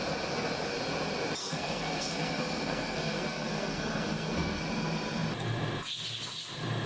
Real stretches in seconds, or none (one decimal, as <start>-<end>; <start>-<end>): 0.0-1.4; 4.6-6.9

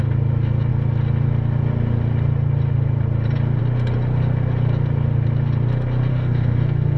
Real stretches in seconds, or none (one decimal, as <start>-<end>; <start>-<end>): 0.0-6.1